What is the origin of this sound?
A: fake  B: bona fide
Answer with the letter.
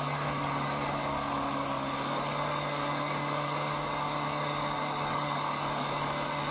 A